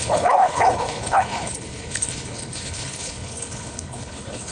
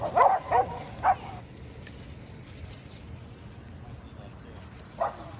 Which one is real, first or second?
second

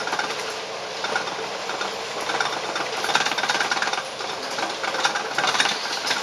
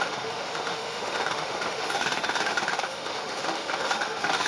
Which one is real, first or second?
first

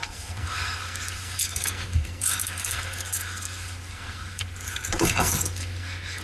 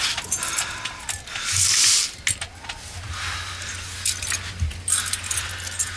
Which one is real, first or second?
second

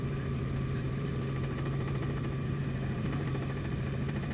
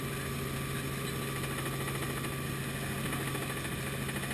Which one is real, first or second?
second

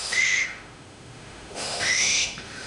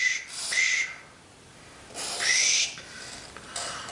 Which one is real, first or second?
second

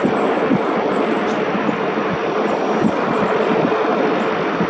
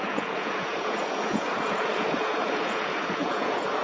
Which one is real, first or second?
first